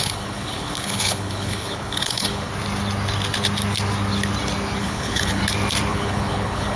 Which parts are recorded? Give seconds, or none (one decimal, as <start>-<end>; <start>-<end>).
2.5-4.8; 5.4-5.9

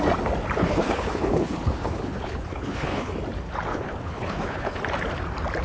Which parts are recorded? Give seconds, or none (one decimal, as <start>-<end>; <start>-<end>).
0.0-0.6; 3.1-3.7; 4.8-5.6

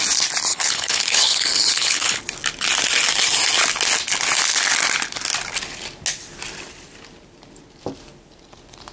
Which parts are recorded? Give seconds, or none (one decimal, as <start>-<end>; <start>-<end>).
0.0-0.5; 2.2-8.9

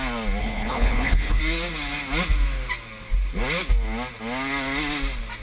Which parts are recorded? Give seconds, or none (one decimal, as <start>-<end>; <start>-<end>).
0.0-0.4; 1.4-5.4

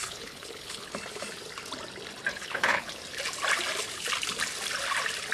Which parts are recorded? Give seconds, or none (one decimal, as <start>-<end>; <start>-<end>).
0.9-2.3; 3.0-5.3

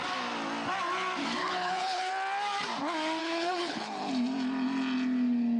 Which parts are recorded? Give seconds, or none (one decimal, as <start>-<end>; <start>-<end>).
0.0-1.4; 2.1-3.2; 4.1-5.6